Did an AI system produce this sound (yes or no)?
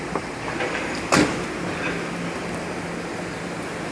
no